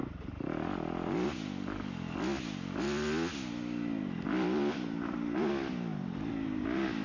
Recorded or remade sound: recorded